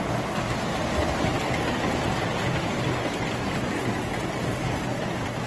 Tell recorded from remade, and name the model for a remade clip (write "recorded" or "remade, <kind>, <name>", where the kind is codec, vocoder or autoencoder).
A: recorded